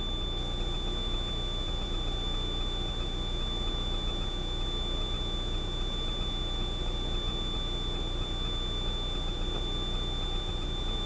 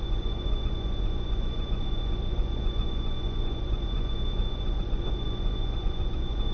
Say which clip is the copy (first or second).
second